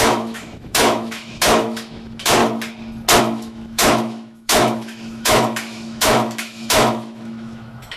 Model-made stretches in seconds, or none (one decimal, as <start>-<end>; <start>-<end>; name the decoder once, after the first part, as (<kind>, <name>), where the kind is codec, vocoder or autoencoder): 0.0-2.4 (autoencoder, DAC-VAE); 3.2-8.0